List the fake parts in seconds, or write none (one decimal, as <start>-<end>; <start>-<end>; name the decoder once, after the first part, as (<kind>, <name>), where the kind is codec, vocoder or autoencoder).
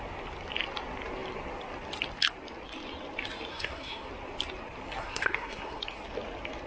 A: 3.5-4.1 (codec, SNAC); 5.0-5.8